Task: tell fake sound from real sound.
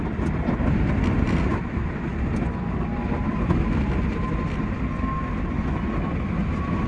real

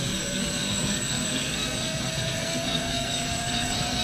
fake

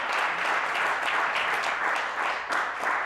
real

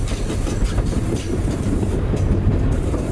fake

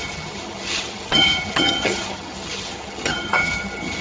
fake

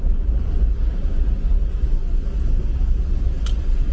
real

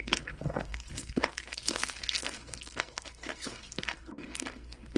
fake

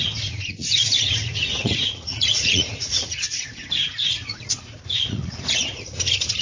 fake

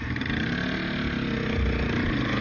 real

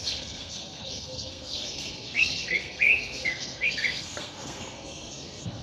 fake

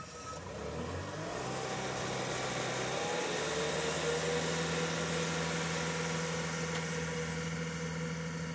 real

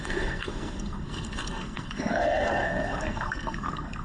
fake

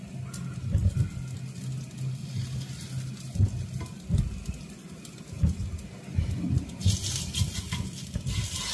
real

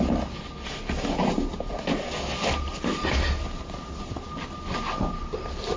real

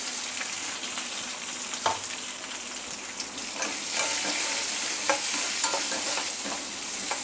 real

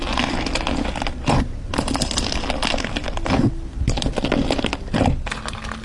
real